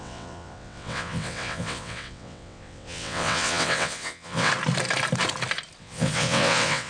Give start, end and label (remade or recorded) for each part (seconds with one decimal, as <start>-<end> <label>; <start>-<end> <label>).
0.0-4.5 remade; 4.5-5.8 recorded; 5.8-6.9 remade